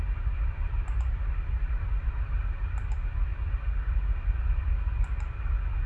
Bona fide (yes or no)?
yes